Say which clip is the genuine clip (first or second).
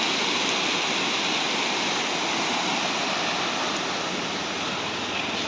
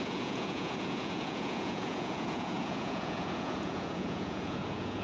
first